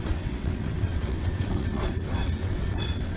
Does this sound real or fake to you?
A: fake